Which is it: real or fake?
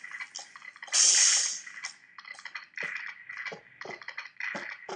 real